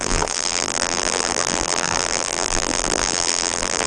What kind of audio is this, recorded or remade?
remade